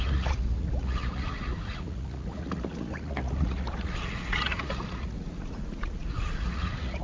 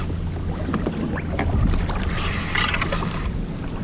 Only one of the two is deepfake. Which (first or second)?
first